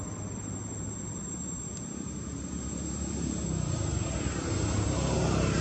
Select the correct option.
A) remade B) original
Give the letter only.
B